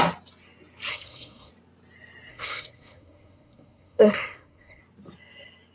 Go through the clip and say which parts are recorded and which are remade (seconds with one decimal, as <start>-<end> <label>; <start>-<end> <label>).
0.0-0.9 recorded; 0.9-1.5 remade; 1.5-2.3 recorded; 2.3-4.8 remade; 4.8-5.7 recorded